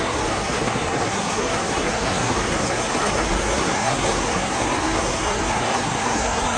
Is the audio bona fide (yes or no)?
no